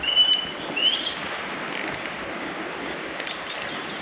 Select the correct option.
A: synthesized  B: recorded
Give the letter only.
B